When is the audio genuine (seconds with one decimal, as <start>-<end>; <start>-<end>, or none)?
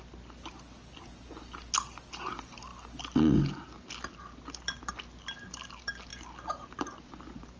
0.0-7.6